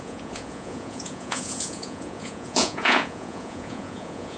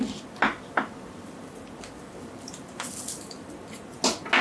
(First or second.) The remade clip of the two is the first